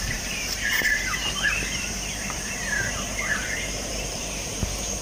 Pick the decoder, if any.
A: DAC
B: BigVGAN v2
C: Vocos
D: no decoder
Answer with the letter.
B